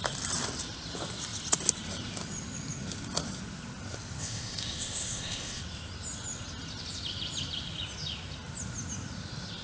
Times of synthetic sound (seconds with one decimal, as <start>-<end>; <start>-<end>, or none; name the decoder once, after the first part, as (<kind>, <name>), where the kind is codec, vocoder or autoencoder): 4.2-5.6 (codec, ZipCodec)